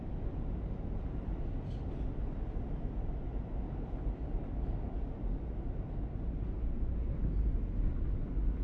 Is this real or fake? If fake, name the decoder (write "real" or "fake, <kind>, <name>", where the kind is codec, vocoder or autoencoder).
real